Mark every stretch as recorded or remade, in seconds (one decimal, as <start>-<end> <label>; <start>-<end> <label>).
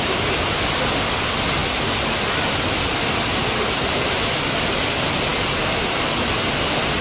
0.0-7.0 recorded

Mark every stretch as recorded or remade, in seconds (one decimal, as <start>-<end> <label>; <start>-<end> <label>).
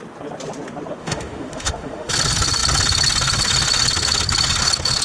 0.0-1.0 recorded; 1.0-2.1 remade; 2.1-5.0 recorded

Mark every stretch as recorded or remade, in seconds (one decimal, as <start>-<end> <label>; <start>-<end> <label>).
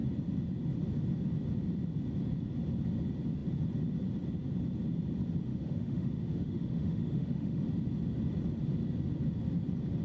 0.0-5.5 recorded; 5.5-7.6 remade; 7.6-10.0 recorded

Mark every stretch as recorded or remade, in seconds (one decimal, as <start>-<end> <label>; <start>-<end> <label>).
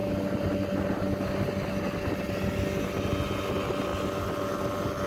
0.0-5.1 recorded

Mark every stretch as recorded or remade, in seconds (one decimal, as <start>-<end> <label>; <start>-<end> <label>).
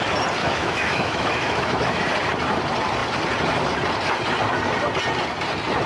0.0-0.4 recorded; 0.4-2.0 remade; 2.0-5.9 recorded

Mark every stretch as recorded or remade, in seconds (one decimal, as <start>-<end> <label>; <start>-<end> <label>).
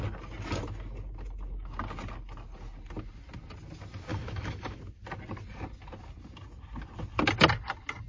0.0-4.1 recorded; 4.1-4.8 remade; 4.8-8.1 recorded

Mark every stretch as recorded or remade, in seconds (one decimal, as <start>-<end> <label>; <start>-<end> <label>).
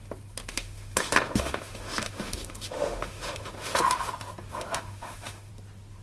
0.0-0.5 recorded; 0.5-4.1 remade; 4.1-4.5 recorded; 4.5-5.5 remade; 5.5-6.0 recorded